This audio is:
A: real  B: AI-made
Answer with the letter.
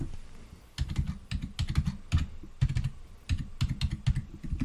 A